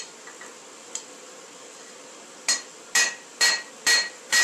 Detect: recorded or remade recorded